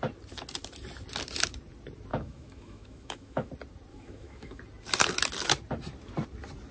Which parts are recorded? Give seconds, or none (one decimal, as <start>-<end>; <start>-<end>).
0.0-2.1; 3.5-3.9; 4.6-6.7